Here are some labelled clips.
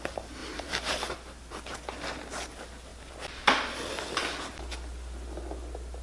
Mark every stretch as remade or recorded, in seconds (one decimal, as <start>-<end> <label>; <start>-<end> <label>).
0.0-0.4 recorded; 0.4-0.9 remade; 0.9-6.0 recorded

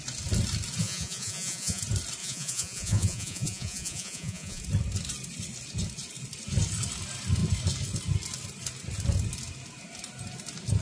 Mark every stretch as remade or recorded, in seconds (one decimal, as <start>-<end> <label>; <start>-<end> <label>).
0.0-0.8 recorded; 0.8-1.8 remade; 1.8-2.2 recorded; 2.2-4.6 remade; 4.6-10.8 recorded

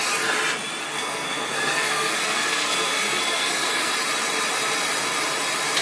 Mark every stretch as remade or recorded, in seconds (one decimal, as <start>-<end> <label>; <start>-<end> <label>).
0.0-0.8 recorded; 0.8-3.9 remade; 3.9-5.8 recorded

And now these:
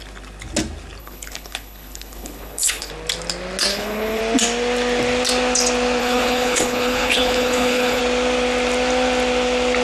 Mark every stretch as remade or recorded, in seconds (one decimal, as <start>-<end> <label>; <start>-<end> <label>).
0.0-1.0 recorded; 1.0-2.9 remade; 2.9-3.7 recorded; 3.7-4.2 remade; 4.2-6.0 recorded; 6.0-8.0 remade; 8.0-9.8 recorded

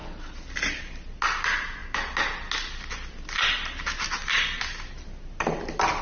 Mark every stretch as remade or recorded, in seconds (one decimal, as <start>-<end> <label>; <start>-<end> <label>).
0.0-6.0 recorded

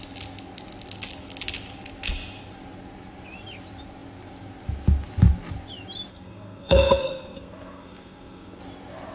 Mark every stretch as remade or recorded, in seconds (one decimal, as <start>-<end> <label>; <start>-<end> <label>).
0.0-6.1 recorded; 6.1-8.6 remade; 8.6-9.1 recorded